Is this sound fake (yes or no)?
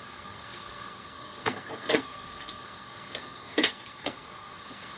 yes